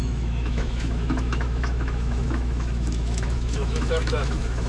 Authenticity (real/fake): fake